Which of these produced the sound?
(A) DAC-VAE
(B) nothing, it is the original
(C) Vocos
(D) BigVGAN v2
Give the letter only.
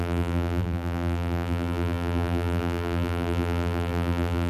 D